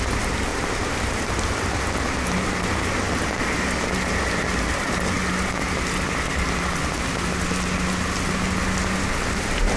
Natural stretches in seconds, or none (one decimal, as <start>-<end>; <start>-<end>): 0.0-0.5; 1.0-9.8